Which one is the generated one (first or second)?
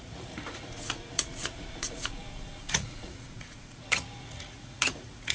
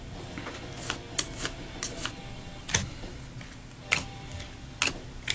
first